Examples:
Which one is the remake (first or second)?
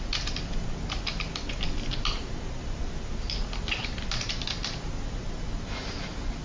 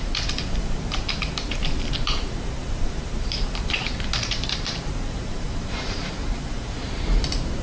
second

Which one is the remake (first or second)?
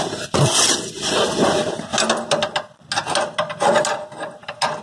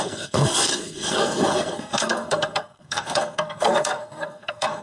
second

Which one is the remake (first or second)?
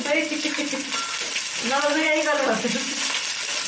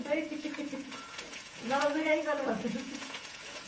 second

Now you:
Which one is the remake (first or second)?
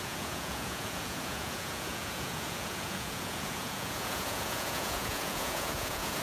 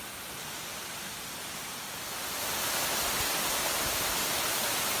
first